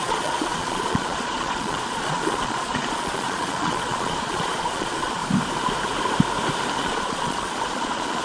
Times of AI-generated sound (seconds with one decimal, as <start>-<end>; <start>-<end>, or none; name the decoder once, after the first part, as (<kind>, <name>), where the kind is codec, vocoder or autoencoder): 0.0-5.2 (vocoder, Vocos); 6.8-8.2

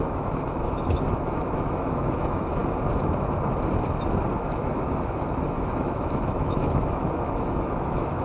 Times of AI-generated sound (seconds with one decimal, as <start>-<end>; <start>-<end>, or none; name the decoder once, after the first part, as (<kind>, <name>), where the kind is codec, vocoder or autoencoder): 0.0-2.6 (autoencoder, DAC-VAE); 4.4-8.2

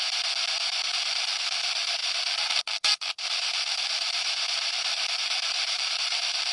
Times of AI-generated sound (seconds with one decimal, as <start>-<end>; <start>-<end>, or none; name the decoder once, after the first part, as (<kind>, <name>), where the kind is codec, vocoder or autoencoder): 0.9-6.5 (vocoder, BigVGAN v2)

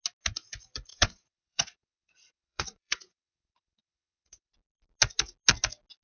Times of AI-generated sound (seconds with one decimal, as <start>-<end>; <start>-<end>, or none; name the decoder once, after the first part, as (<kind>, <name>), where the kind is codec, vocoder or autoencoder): 0.9-4.5 (vocoder, WaveNeXt)

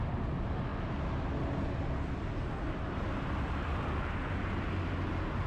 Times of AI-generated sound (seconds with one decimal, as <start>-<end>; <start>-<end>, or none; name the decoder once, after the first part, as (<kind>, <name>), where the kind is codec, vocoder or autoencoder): none

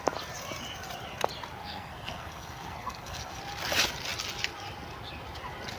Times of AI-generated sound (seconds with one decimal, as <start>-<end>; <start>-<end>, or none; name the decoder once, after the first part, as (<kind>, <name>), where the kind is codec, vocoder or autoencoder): 1.6-3.4 (codec, SNAC)